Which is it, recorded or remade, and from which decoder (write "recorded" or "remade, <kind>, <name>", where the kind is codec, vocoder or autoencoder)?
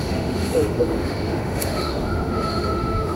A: remade, autoencoder, DAC-VAE